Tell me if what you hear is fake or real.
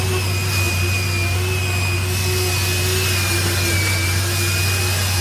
real